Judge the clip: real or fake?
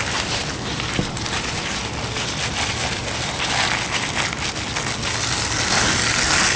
real